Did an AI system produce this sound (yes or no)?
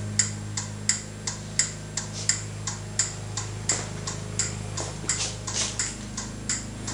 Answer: no